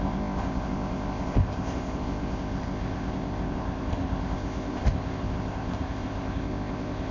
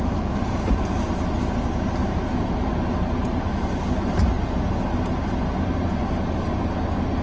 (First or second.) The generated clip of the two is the first